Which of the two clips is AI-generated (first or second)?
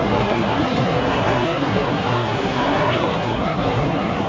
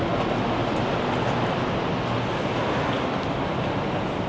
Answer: first